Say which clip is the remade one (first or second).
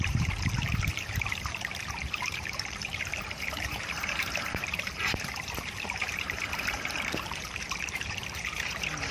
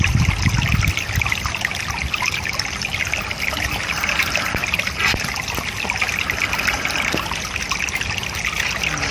first